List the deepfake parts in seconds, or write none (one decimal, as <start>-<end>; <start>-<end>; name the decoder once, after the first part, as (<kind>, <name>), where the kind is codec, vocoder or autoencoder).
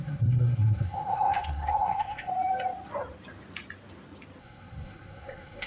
0.0-2.3 (codec, SNAC); 4.4-5.7